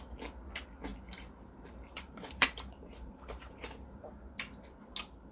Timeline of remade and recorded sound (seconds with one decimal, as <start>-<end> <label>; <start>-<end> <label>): 0.0-0.9 recorded; 0.9-4.1 remade; 4.1-5.3 recorded